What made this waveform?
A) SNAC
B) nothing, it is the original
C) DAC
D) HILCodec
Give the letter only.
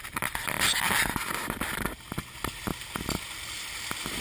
B